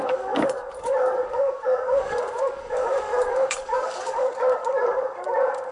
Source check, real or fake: fake